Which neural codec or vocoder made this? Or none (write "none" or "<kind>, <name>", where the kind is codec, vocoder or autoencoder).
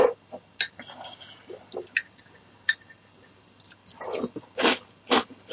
none